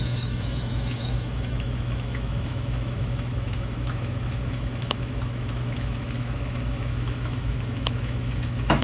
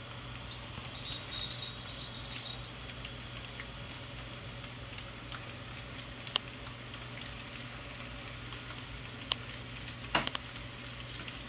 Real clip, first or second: second